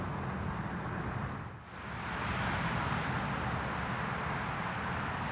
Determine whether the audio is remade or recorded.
recorded